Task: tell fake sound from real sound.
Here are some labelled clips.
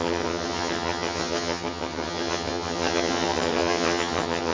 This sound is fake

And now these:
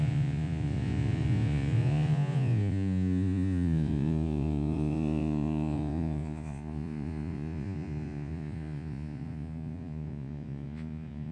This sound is fake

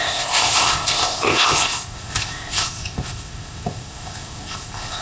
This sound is fake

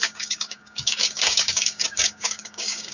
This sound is fake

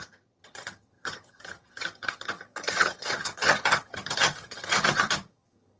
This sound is fake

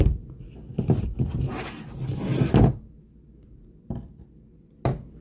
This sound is real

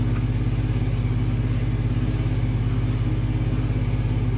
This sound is real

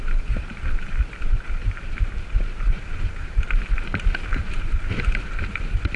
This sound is fake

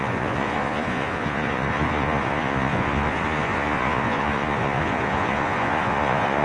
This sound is fake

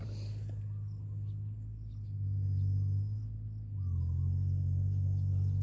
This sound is real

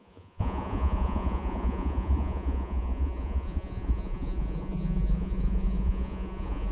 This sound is fake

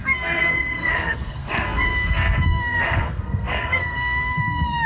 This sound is fake